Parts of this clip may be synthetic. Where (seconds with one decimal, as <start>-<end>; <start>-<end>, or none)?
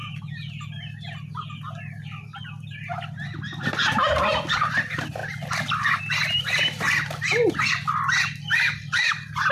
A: 4.5-9.5